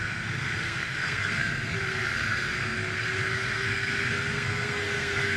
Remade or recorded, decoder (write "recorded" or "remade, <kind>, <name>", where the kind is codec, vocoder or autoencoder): remade, codec, SNAC